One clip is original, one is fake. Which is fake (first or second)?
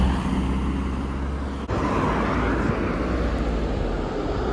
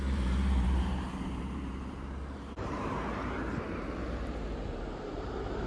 second